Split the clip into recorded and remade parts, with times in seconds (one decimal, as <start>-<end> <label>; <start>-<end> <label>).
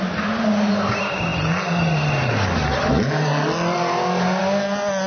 0.0-5.1 recorded